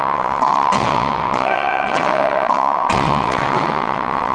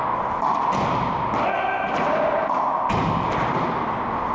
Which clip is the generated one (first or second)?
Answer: first